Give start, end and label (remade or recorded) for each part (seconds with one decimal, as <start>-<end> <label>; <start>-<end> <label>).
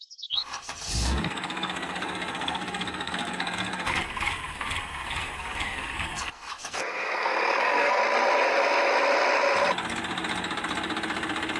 0.0-8.0 remade; 8.0-11.6 recorded